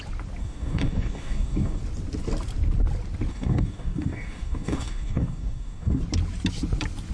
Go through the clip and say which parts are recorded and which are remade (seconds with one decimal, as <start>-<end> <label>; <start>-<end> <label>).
0.0-0.4 recorded; 0.4-1.8 remade; 1.8-3.3 recorded; 3.3-6.0 remade; 6.0-7.1 recorded